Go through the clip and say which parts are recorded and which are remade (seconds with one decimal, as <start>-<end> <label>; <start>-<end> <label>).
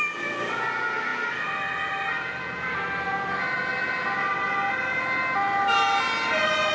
0.0-6.7 recorded